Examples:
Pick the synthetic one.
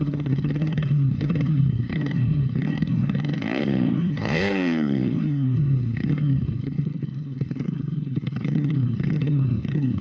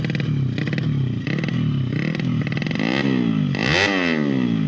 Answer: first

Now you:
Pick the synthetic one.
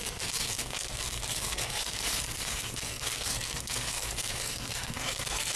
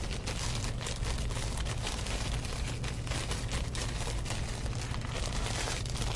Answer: first